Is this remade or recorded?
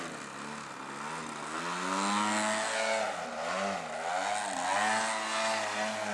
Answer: recorded